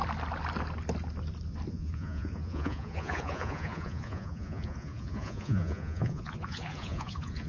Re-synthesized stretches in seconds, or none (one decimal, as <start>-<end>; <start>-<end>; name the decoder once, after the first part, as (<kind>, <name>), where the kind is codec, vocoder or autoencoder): 1.7-7.5 (vocoder, Vocos)